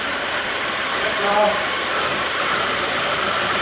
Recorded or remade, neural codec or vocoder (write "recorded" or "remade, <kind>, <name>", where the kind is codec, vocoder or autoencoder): remade, vocoder, BigVGAN v2